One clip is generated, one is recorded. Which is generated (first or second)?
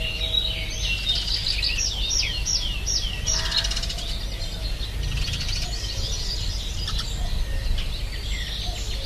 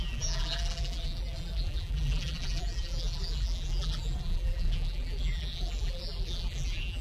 second